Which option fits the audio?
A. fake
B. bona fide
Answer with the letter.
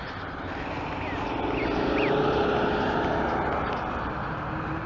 B